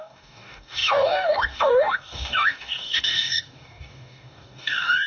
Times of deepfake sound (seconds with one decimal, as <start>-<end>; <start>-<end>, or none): 0.0-5.1